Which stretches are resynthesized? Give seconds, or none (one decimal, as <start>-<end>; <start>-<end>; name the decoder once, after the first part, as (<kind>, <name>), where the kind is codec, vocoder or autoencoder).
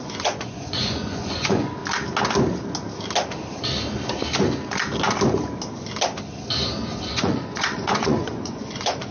0.0-1.8 (vocoder, Vocos); 7.0-9.1